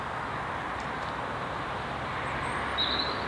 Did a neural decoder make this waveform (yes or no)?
no